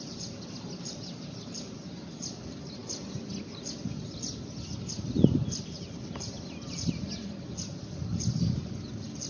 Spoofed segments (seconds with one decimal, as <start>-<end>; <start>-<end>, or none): none